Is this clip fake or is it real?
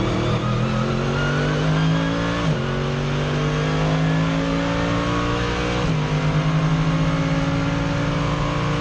real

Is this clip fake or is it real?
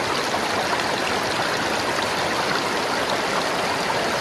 real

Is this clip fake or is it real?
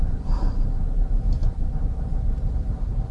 fake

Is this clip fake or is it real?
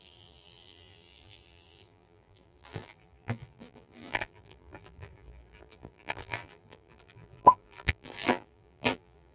fake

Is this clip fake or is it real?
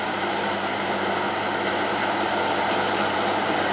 fake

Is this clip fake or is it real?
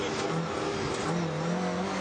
real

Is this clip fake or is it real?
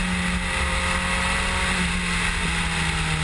real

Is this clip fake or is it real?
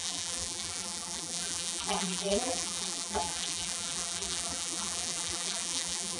fake